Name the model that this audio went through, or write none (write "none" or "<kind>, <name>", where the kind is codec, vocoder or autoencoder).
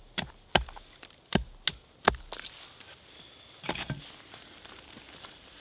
none